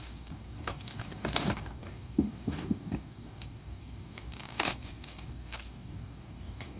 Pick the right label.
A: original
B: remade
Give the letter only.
B